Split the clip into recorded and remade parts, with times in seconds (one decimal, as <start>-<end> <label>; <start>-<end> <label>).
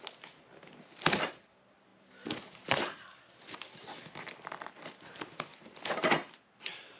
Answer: 0.0-7.0 recorded